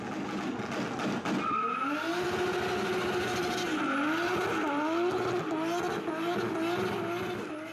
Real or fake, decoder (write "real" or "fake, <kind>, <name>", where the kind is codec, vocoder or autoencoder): real